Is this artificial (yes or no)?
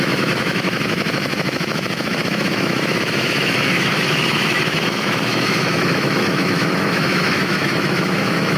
yes